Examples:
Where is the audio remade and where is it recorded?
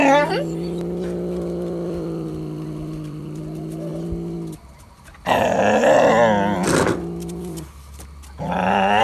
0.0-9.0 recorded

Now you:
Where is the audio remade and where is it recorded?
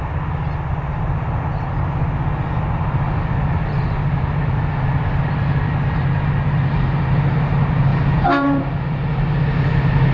0.0-7.9 recorded; 7.9-8.7 remade; 8.7-10.1 recorded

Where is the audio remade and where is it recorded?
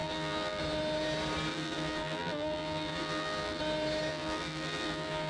0.0-0.6 remade; 0.6-1.5 recorded; 1.5-3.6 remade; 3.6-4.1 recorded; 4.1-5.3 remade